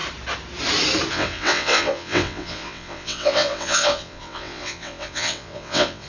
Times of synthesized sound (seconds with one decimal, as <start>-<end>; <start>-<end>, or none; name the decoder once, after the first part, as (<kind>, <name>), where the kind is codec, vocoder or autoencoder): 1.1-6.1 (vocoder, WaveNeXt)